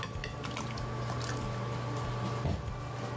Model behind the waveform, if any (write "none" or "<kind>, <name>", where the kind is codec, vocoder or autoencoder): none